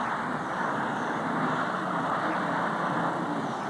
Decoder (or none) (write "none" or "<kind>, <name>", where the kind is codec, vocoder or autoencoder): none